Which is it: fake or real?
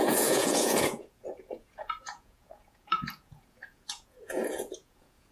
fake